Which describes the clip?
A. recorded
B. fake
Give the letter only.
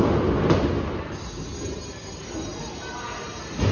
A